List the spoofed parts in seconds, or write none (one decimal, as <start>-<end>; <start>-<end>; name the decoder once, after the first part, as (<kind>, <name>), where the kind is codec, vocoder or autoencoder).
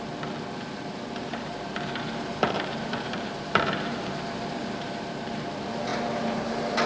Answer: 1.3-5.3 (vocoder, BigVGAN v2); 5.9-6.5